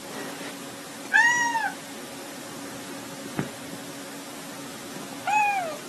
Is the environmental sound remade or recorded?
recorded